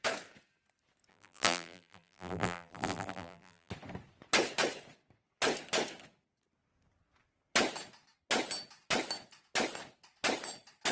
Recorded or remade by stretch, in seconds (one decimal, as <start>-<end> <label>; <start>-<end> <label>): 0.0-1.1 recorded; 1.1-3.7 remade; 3.7-10.9 recorded